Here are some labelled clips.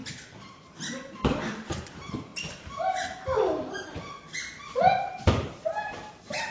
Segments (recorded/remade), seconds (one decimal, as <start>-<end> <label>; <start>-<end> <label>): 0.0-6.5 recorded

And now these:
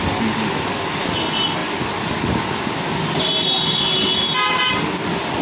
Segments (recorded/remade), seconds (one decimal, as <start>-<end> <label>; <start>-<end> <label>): 0.0-5.4 recorded

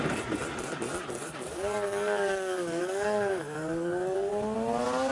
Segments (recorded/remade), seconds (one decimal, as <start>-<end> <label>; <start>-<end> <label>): 0.0-1.2 recorded; 1.2-4.3 remade; 4.3-5.1 recorded

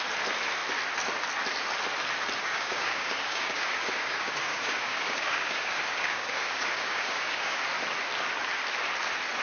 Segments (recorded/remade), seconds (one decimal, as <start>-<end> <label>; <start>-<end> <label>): 0.0-2.5 recorded; 2.5-7.6 remade; 7.6-9.4 recorded

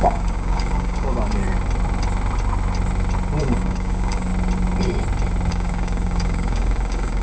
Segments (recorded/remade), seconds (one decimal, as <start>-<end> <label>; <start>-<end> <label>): 0.0-1.4 remade; 1.4-3.4 recorded; 3.4-4.3 remade; 4.3-5.5 recorded; 5.5-7.2 remade

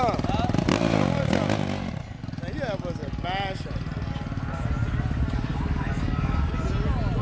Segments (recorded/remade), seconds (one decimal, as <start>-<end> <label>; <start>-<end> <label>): 0.0-5.5 recorded; 5.5-6.5 remade; 6.5-7.2 recorded